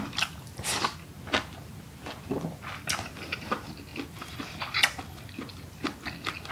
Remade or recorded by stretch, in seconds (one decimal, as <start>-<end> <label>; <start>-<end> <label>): 0.0-6.5 recorded